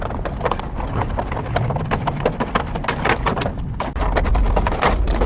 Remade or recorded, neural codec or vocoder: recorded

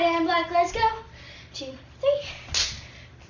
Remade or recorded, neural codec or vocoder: recorded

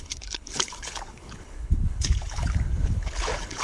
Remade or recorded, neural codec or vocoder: remade, codec, HILCodec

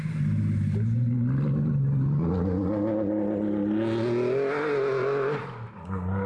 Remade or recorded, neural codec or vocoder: recorded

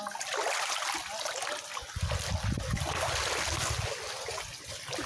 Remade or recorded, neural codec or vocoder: recorded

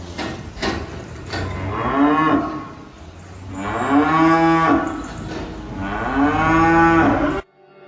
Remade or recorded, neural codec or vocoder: recorded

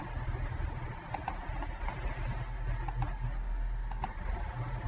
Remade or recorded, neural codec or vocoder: recorded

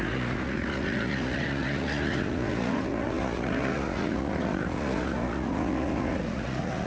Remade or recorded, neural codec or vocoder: remade, vocoder, Vocos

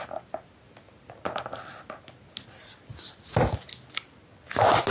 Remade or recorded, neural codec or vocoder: recorded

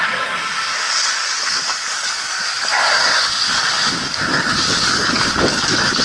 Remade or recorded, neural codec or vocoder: remade, codec, DAC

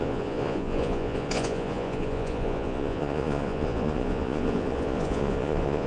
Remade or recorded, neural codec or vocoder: remade, vocoder, Vocos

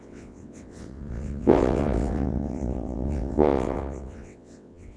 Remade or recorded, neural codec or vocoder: remade, vocoder, WaveNeXt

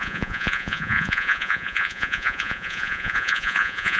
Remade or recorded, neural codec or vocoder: remade, vocoder, Vocos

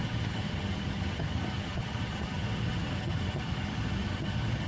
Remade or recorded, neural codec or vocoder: remade, vocoder, HiFi-GAN